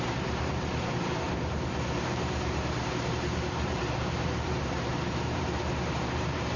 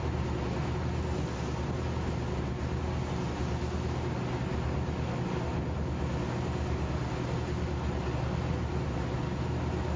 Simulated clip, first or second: first